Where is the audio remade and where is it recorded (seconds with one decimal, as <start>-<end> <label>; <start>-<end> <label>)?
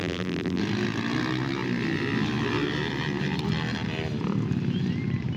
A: 0.0-0.6 remade; 0.6-5.4 recorded